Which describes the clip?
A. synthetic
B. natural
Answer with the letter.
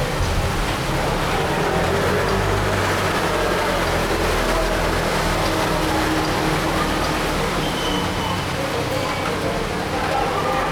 B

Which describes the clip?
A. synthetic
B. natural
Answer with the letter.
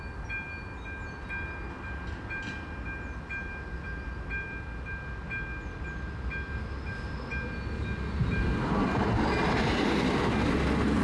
B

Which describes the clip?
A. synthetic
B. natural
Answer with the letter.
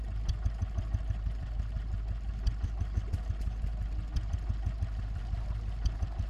B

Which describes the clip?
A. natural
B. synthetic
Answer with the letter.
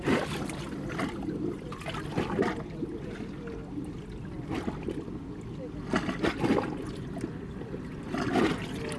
A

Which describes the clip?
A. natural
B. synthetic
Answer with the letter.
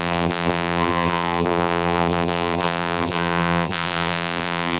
B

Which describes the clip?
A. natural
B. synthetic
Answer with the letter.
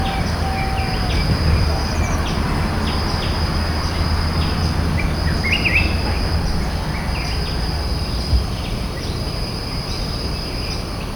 A